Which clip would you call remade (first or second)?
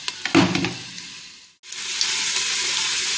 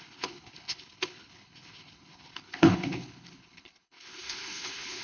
second